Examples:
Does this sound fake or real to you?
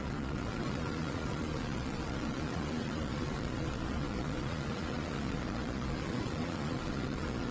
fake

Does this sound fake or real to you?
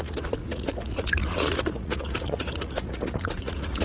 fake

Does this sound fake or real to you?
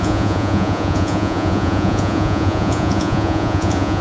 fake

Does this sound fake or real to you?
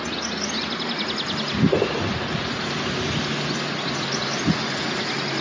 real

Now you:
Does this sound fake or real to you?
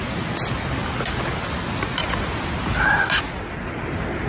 real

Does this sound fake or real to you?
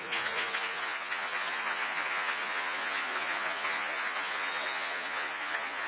fake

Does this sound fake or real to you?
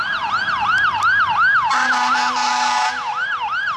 real